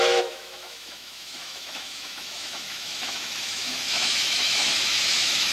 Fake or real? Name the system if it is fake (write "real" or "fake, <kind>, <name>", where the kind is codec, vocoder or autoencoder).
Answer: fake, autoencoder, DAC-VAE